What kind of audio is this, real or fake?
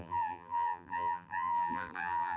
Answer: fake